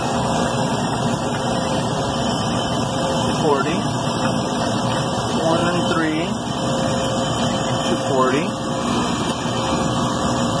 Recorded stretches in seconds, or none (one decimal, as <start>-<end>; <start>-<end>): 5.6-10.0

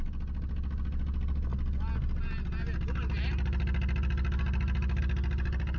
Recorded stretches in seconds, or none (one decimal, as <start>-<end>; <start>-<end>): 0.0-5.8

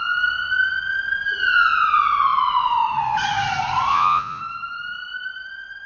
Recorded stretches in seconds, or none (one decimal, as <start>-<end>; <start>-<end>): 0.0-3.9; 4.4-5.9

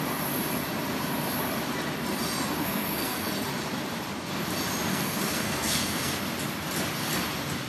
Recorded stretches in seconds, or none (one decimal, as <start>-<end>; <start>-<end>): 0.0-2.6; 3.3-4.9; 6.1-7.7

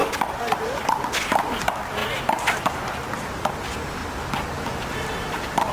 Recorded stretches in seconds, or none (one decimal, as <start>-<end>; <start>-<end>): 2.0-3.3; 4.0-4.6

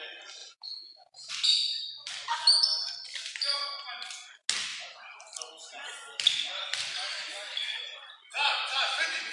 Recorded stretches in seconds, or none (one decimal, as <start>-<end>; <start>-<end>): 0.0-0.4; 1.3-9.3